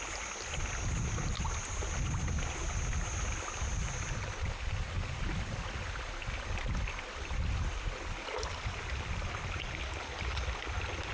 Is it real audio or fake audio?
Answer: real